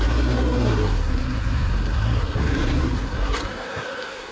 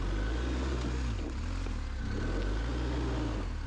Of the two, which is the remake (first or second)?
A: first